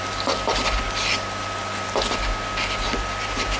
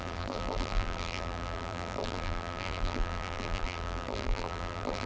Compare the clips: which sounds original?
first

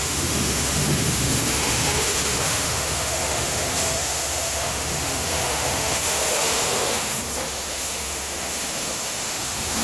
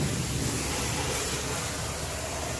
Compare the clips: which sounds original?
second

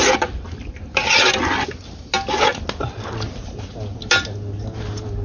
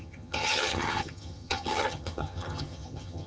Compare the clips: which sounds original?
first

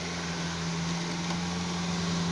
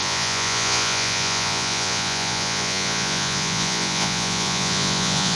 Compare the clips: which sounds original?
first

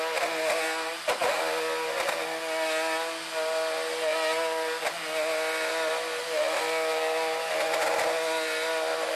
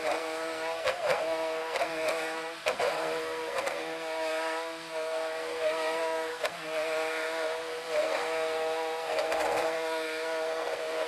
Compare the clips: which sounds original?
first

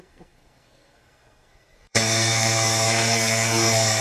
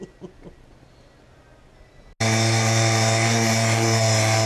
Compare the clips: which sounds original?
second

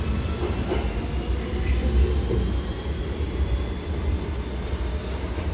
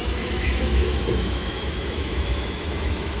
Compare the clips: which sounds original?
first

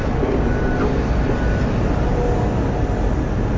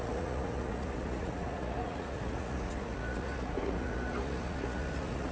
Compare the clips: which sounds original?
first